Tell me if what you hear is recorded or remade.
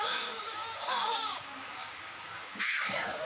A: remade